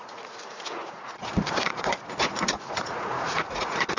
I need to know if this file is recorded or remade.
remade